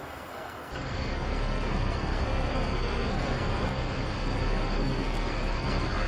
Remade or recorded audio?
remade